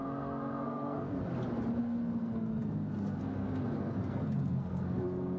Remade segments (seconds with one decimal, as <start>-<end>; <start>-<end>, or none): 0.0-1.2; 1.8-5.4